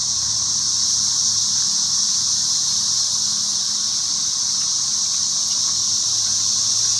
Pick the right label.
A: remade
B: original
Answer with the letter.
B